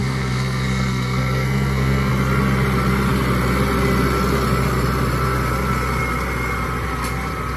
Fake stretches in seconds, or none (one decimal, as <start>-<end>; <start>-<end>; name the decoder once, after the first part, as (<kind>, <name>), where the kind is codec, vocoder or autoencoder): 0.0-2.1 (codec, SNAC)